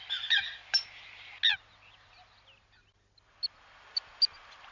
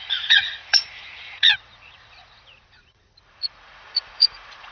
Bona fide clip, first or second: first